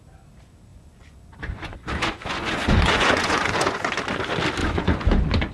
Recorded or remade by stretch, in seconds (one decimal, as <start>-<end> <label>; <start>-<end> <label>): 0.0-0.7 recorded; 0.7-4.0 remade; 4.0-4.6 recorded; 4.6-5.5 remade